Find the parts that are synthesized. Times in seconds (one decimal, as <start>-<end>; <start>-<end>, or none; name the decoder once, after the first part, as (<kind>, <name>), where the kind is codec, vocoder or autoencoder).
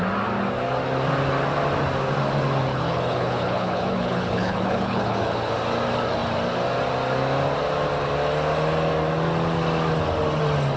2.7-5.5 (codec, HILCodec)